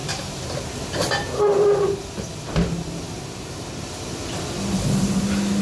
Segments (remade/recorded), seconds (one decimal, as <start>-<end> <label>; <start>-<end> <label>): 0.0-5.6 recorded